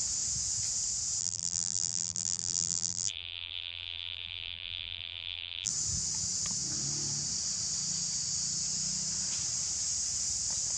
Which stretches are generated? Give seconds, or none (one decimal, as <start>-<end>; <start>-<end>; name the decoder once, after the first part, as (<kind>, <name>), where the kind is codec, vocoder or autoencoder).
1.2-5.7 (vocoder, BigVGAN v2)